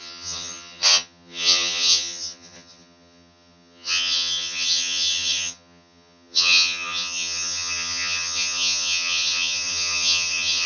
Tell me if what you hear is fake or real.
fake